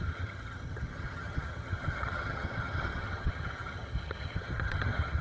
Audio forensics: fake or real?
fake